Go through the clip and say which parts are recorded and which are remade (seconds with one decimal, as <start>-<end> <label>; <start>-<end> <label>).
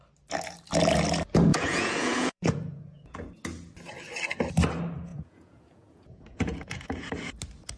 0.0-1.5 recorded; 1.5-3.3 remade; 3.3-5.1 recorded; 5.1-7.1 remade; 7.1-7.8 recorded